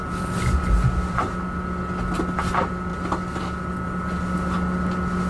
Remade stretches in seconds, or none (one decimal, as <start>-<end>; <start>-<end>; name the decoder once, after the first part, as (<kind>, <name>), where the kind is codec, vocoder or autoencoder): none